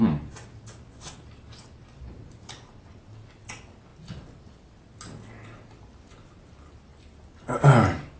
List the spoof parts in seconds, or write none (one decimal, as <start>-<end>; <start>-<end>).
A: none